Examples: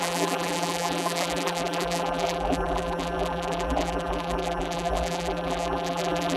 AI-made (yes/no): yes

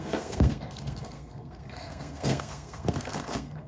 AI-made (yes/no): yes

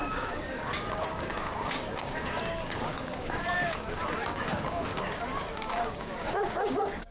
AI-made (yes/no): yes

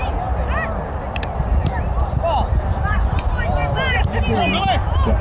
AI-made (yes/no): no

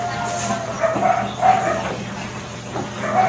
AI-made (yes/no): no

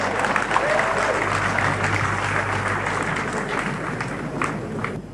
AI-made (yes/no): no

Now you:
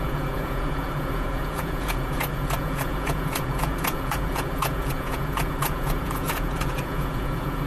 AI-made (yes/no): yes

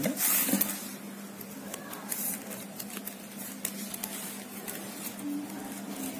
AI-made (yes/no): no